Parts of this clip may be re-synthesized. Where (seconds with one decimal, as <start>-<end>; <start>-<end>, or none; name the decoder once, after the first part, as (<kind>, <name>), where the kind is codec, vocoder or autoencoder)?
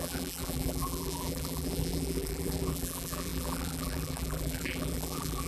0.0-5.5 (vocoder, BigVGAN v2)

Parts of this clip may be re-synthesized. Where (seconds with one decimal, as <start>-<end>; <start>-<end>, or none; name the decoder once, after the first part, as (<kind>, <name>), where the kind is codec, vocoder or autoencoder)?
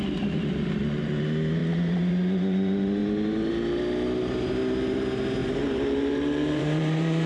5.4-7.3 (vocoder, BigVGAN v2)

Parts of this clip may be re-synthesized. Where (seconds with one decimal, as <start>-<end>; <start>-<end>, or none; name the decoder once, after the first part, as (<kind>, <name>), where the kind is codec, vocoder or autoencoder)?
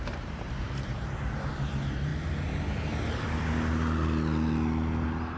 0.0-2.1 (vocoder, BigVGAN v2)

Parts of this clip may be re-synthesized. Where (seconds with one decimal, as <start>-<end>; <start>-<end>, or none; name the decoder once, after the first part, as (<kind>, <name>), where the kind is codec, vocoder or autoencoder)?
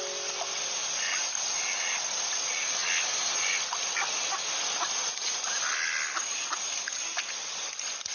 0.0-0.8 (vocoder, BigVGAN v2); 1.4-2.8; 7.3-8.1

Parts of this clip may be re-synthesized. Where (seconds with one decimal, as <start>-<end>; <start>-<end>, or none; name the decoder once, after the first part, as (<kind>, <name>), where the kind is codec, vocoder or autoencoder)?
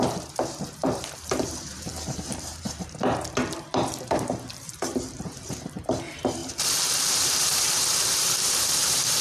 0.0-6.4 (vocoder, BigVGAN v2); 7.1-9.2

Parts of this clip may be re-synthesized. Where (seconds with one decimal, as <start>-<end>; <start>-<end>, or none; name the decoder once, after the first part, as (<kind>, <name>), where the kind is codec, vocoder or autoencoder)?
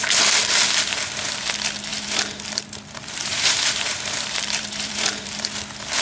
1.9-5.5 (vocoder, BigVGAN v2)